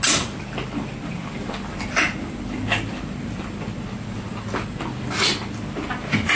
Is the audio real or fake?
real